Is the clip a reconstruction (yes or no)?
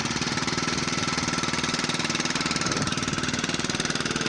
yes